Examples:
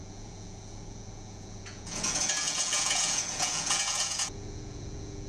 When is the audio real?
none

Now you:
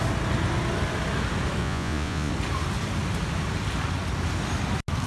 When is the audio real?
0.0-1.6; 2.3-5.1

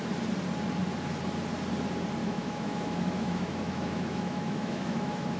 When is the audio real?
0.0-2.2